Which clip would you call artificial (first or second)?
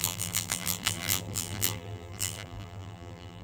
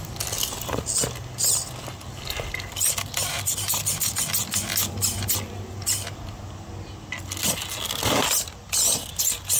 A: first